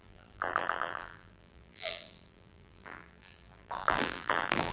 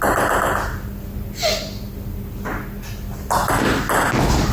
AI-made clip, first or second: first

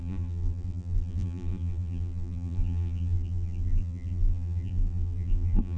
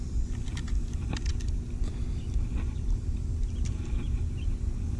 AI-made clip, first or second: first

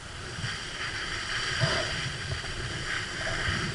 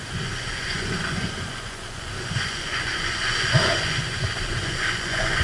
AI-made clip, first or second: second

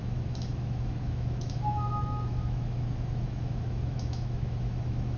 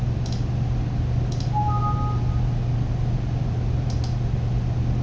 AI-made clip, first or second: first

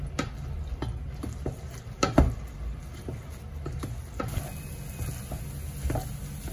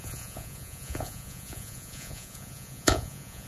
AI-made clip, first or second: second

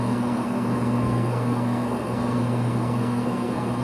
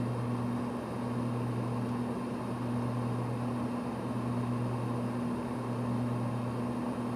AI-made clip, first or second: first